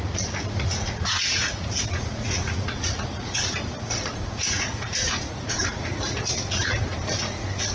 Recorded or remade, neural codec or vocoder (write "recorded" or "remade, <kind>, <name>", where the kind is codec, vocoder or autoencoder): remade, vocoder, Vocos